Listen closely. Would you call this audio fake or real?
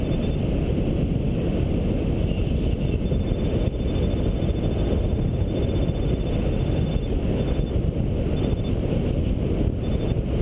real